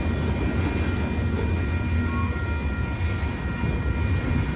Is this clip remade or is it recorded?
recorded